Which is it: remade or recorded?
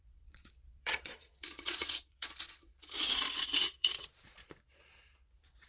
remade